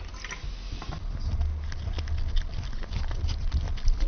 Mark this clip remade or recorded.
recorded